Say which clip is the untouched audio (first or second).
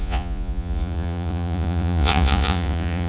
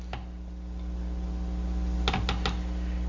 second